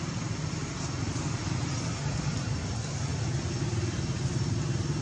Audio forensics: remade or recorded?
recorded